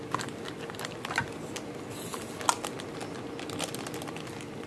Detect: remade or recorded recorded